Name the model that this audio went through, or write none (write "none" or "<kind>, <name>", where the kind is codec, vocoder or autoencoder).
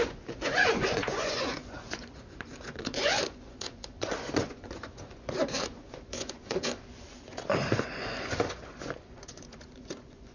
vocoder, Vocos